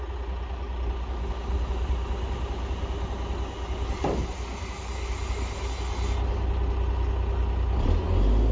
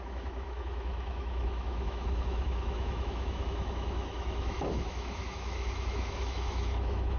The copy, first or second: second